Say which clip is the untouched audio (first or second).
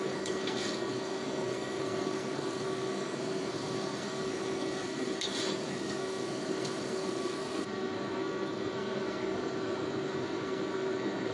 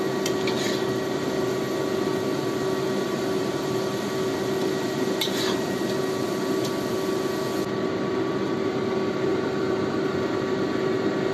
second